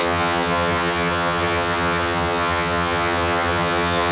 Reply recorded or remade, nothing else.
remade